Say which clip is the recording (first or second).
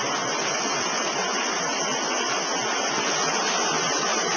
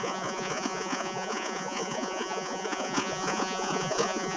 first